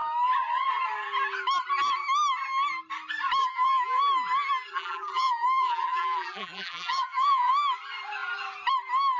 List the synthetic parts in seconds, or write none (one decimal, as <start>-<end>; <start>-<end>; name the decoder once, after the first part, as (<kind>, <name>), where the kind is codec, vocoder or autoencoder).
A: 3.4-4.0 (vocoder, BigVGAN v2); 4.7-7.5